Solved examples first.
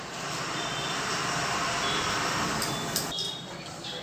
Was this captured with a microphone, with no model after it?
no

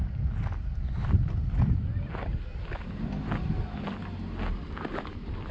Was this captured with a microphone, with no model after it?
yes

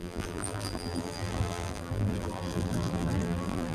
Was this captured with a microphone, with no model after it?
no